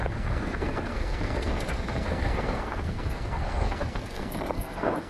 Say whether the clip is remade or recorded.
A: remade